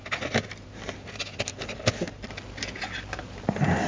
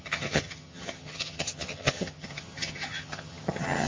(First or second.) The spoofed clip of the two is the second